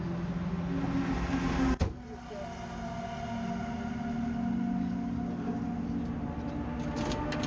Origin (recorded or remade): recorded